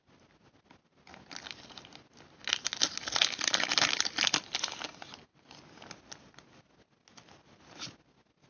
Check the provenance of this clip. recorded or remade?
recorded